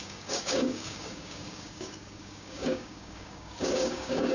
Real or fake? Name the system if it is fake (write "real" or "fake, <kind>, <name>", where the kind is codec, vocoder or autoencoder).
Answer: fake, codec, DAC